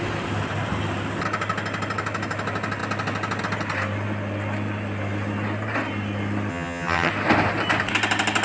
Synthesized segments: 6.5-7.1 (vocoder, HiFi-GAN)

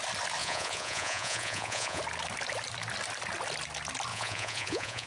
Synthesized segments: 0.4-2.0 (vocoder, Vocos); 4.1-5.1

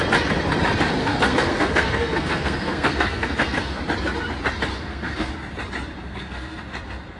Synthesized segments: 1.0-3.8 (codec, SNAC); 4.7-5.3; 6.0-6.6

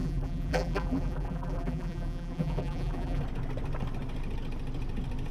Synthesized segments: 0.0-3.2 (vocoder, BigVGAN v2)

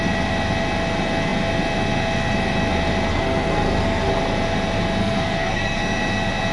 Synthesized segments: 3.1-4.1 (codec, SNAC); 5.0-5.8

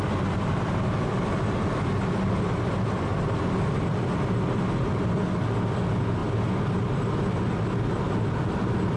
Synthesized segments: none

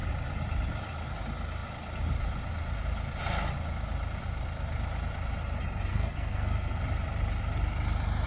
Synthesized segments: 5.9-6.8 (codec, SNAC)

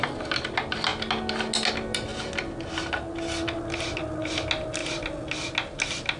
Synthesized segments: none